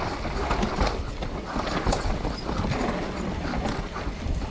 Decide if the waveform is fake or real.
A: real